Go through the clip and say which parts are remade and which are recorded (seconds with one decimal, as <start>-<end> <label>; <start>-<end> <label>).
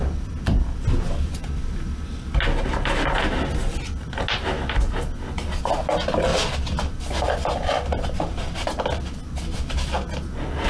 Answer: 0.0-10.7 recorded